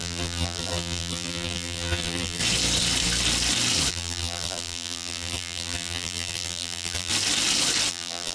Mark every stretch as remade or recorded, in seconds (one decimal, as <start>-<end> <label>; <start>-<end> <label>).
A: 0.0-2.4 remade; 2.4-3.9 recorded; 3.9-7.1 remade; 7.1-7.9 recorded; 7.9-8.3 remade